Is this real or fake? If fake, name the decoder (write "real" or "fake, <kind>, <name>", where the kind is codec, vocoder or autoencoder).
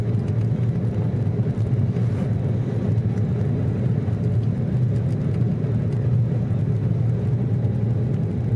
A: real